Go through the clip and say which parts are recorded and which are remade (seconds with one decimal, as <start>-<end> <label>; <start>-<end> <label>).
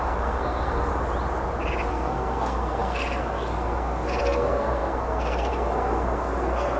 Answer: 0.0-0.9 remade; 0.9-1.9 recorded; 1.9-6.8 remade